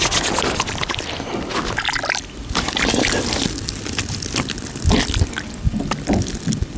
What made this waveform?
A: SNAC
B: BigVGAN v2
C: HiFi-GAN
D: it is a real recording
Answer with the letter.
D